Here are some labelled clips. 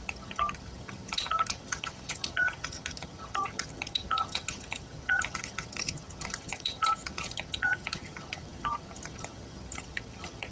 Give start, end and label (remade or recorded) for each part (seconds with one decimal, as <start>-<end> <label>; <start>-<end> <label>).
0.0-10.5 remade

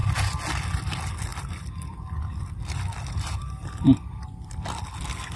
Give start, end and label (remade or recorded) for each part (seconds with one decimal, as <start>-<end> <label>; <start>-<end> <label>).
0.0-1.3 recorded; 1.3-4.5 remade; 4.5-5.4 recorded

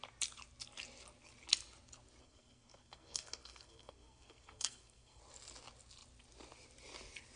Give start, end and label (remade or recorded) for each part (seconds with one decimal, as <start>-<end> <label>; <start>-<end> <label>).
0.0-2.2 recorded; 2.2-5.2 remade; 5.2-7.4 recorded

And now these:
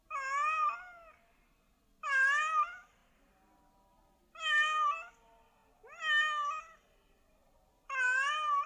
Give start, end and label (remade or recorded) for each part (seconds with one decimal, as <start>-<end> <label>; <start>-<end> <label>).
0.0-8.7 recorded

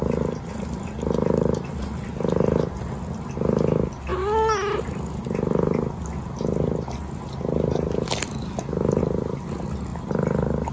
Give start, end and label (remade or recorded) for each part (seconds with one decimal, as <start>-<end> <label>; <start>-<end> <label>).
0.0-10.7 recorded

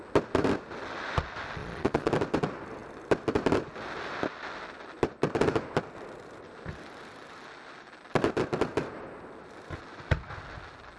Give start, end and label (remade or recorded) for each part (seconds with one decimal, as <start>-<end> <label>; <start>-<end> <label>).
0.0-1.6 recorded; 1.6-2.1 remade; 2.1-11.0 recorded

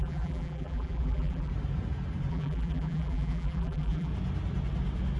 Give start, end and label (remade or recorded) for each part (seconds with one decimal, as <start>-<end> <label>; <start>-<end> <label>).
0.0-1.5 remade; 1.5-2.3 recorded; 2.3-4.1 remade; 4.1-5.2 recorded

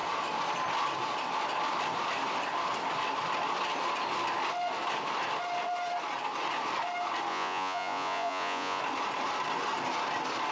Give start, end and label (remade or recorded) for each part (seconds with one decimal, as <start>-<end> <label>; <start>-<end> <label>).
0.0-7.3 recorded; 7.3-8.8 remade; 8.8-10.5 recorded